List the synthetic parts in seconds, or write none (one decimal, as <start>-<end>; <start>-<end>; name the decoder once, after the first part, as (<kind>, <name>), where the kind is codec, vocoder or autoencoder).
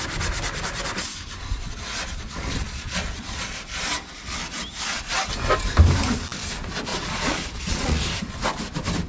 2.1-3.6 (vocoder, Vocos); 6.9-8.0